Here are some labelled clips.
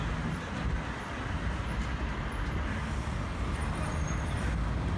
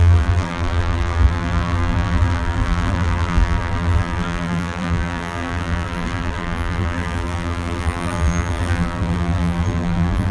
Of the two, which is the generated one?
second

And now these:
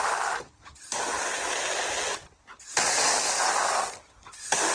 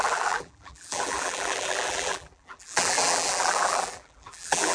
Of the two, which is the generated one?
second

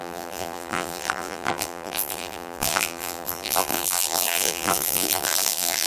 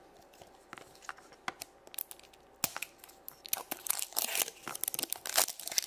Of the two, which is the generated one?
first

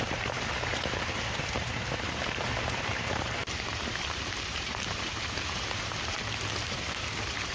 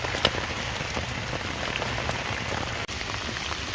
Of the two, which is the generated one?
first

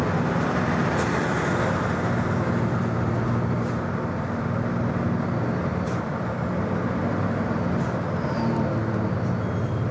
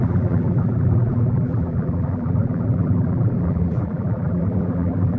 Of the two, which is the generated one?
second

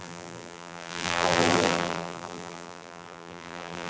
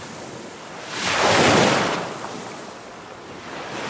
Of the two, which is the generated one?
first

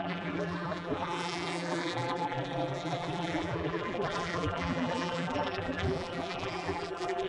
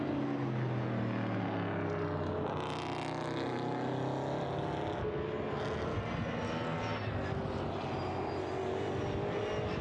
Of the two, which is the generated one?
first